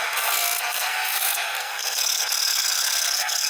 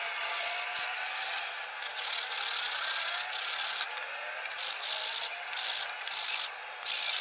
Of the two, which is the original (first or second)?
second